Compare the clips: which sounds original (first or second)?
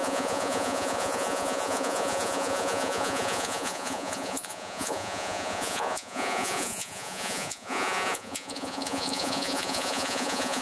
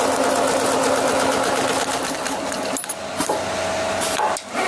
second